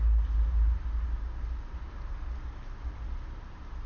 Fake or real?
real